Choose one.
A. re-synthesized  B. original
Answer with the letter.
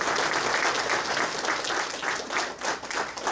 B